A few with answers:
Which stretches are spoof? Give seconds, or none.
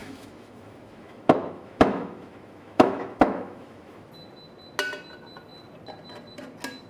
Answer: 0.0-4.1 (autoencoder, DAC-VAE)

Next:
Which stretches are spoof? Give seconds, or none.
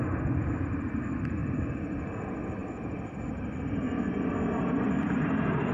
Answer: none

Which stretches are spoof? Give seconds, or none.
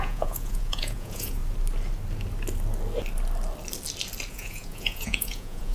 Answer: 0.0-1.4 (vocoder, Vocos); 4.3-5.7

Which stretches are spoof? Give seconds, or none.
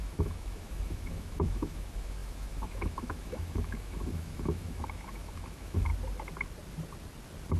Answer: 0.0-5.9 (autoencoder, DAC-VAE)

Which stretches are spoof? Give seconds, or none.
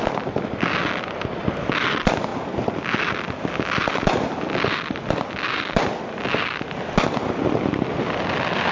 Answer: none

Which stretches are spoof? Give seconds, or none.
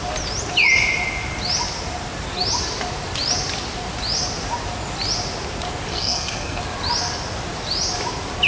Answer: 5.9-6.6 (codec, SNAC)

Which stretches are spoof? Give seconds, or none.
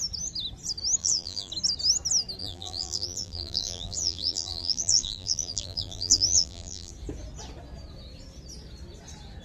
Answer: 1.0-1.5 (vocoder, BigVGAN v2); 2.4-6.9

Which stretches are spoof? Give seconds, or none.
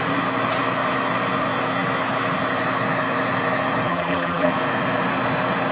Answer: 3.9-4.5 (vocoder, BigVGAN v2)